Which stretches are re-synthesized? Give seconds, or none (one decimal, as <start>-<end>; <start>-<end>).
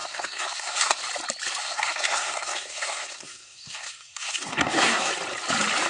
0.0-1.0; 1.6-5.1